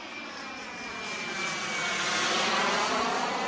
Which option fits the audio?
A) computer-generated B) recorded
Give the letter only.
B